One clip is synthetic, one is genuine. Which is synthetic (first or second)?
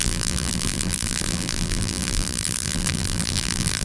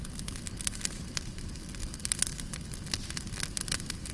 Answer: first